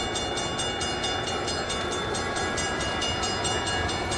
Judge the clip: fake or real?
real